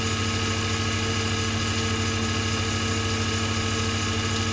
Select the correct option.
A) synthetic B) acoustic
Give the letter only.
B